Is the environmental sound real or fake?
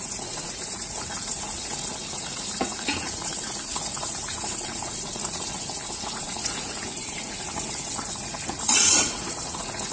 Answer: fake